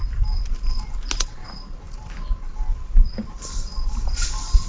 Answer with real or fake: real